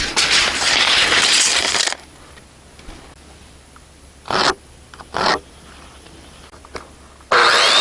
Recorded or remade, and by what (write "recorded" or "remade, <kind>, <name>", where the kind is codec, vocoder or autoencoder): recorded